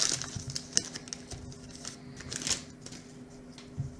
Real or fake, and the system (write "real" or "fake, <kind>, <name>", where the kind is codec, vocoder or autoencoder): real